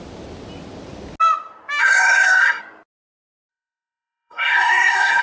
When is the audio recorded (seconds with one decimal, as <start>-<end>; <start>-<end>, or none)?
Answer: 0.0-1.8; 2.6-3.5